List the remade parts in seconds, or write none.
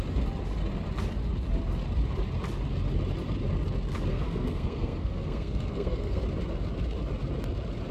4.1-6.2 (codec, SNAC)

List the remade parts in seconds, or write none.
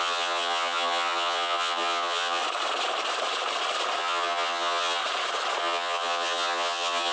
0.0-2.4 (vocoder, HiFi-GAN); 4.0-5.0; 5.6-7.1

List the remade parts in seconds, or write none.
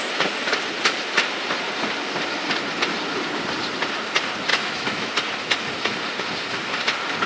4.5-5.1 (autoencoder, DAC-VAE)